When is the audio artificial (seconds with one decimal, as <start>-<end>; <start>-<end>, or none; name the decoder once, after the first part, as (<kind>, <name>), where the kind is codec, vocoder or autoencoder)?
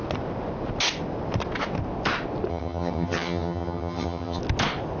2.5-4.4 (vocoder, HiFi-GAN)